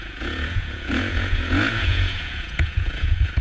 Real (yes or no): no